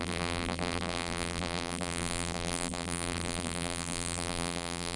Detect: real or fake fake